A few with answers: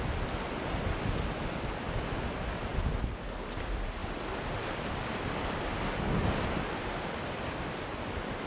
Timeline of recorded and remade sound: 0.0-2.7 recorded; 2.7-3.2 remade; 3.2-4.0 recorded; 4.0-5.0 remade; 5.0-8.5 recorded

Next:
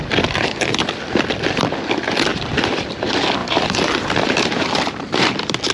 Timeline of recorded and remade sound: 0.0-2.3 recorded; 2.3-3.0 remade; 3.0-3.4 recorded; 3.4-5.3 remade; 5.3-5.7 recorded

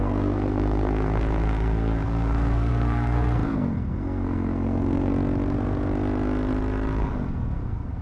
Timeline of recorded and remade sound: 0.0-5.1 remade; 5.1-7.0 recorded; 7.0-8.0 remade

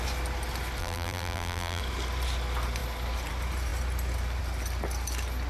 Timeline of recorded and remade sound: 0.0-0.8 recorded; 0.8-1.8 remade; 1.8-5.5 recorded